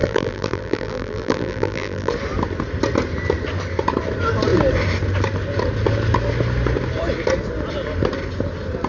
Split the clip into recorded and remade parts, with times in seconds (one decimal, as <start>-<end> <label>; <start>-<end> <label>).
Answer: 0.0-2.1 remade; 2.1-8.9 recorded